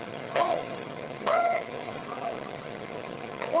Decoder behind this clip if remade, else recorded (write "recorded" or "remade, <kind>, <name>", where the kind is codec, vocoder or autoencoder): remade, vocoder, HiFi-GAN